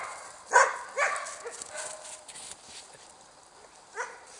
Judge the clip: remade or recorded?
recorded